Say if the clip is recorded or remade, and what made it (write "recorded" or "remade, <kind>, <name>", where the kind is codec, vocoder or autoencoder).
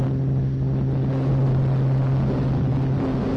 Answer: recorded